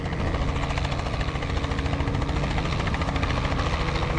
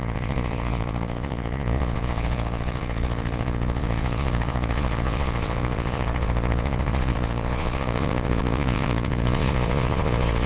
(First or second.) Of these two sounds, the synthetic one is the second